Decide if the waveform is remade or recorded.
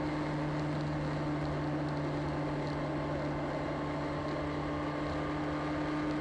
recorded